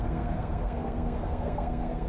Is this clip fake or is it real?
fake